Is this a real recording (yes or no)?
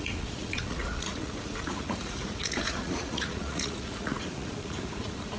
no